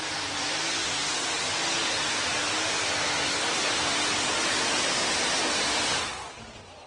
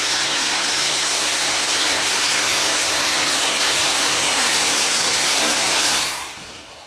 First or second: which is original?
first